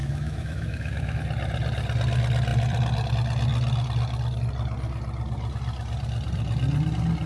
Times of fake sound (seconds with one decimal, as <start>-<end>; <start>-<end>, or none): 0.0-1.2